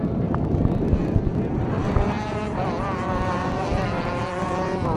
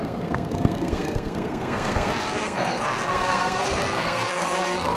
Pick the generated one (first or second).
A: second